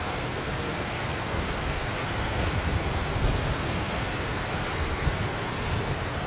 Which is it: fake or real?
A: fake